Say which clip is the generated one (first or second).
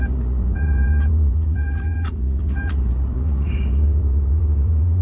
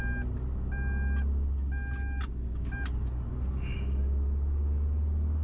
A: first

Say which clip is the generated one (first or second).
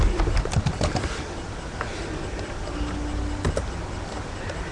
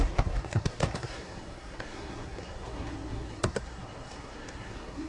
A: second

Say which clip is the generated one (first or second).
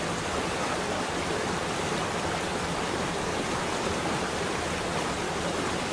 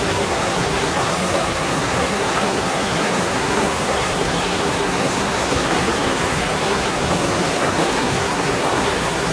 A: second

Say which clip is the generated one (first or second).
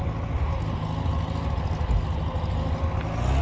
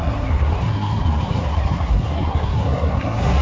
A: second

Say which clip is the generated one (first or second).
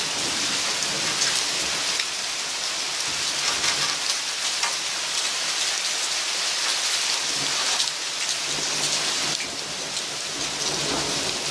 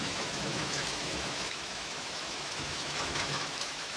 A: second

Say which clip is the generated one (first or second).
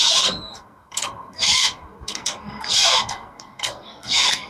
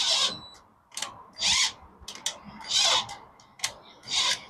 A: first